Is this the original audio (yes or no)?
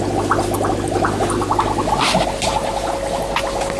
yes